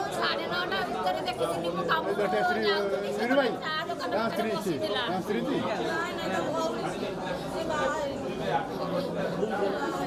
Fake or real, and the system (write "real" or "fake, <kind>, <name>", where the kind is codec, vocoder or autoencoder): real